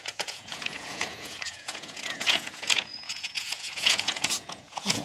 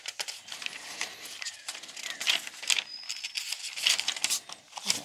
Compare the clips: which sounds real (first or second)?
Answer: second